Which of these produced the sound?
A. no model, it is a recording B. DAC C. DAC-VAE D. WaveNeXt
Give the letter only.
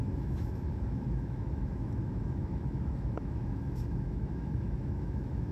C